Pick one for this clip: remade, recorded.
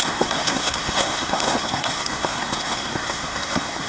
remade